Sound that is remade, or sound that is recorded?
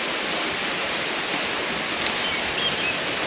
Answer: recorded